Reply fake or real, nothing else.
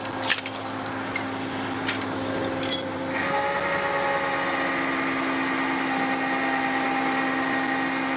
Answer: real